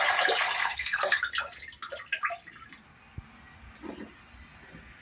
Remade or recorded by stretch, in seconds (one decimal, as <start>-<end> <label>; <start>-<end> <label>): 0.0-0.6 recorded; 0.6-1.2 remade; 1.2-5.0 recorded